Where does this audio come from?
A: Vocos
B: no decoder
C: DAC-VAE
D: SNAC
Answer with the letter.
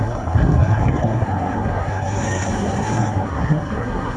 D